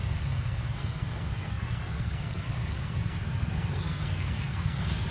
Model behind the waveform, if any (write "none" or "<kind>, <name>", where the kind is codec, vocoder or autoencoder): codec, SNAC